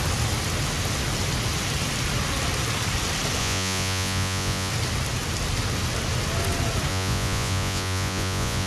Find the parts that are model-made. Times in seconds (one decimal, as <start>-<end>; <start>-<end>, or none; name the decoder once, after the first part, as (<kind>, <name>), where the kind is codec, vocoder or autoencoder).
3.4-4.7 (vocoder, Vocos); 6.9-8.7